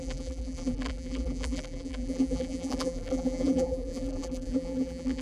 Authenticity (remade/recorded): remade